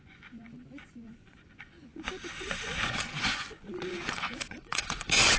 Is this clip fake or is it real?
fake